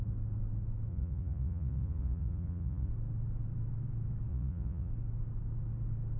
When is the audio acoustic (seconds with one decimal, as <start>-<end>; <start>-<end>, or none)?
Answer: 0.0-0.9; 2.9-4.3; 4.9-6.2